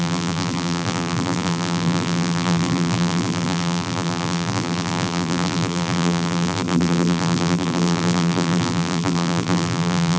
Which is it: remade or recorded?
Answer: remade